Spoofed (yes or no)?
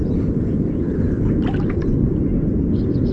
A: no